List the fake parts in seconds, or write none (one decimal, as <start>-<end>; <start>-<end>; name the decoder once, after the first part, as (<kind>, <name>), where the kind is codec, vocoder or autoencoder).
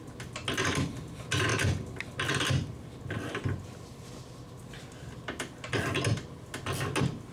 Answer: none